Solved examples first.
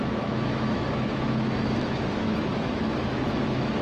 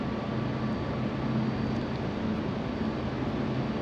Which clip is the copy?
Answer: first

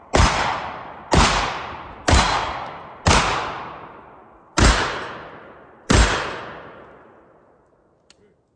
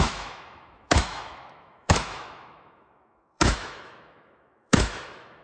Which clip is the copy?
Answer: second